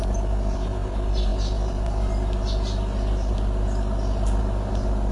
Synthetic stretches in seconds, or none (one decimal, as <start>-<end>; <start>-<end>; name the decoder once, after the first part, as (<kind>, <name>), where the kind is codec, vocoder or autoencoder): none

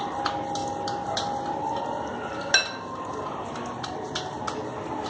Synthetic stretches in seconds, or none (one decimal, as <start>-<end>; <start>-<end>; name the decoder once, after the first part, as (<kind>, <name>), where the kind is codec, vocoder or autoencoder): none